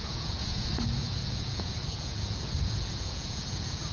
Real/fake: fake